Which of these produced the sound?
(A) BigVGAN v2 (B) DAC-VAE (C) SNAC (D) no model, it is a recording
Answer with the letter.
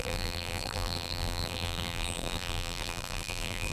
A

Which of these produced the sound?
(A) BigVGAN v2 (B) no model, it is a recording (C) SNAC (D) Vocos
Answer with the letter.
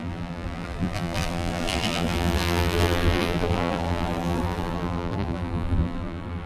A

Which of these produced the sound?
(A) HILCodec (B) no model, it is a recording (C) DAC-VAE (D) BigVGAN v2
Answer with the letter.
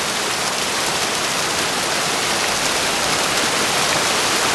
B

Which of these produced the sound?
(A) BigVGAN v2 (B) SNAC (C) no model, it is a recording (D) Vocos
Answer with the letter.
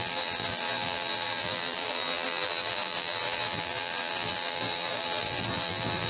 A